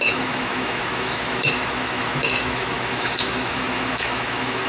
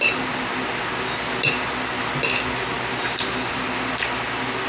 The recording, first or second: second